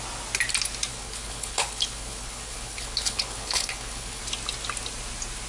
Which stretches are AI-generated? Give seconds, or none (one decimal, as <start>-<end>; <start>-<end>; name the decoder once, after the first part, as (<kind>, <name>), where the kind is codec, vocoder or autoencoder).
0.9-4.2 (codec, HILCodec)